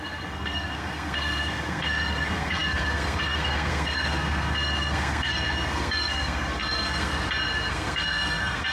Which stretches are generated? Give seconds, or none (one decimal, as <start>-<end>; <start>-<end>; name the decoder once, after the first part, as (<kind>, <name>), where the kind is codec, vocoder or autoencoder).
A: 0.0-7.1 (codec, SNAC); 7.7-8.7